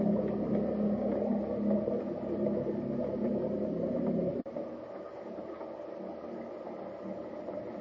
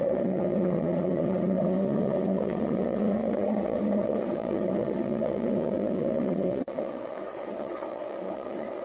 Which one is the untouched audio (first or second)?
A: first